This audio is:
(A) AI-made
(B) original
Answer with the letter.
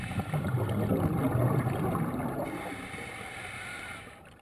A